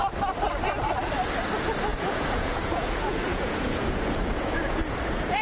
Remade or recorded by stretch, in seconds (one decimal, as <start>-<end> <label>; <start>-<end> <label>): 0.0-1.9 recorded; 1.9-5.4 remade